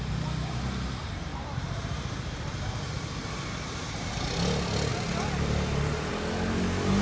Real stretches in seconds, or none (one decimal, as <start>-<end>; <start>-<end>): 0.0-1.3; 4.1-4.9; 6.1-7.0